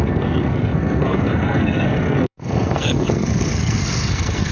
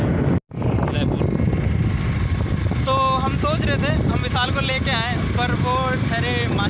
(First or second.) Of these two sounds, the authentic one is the second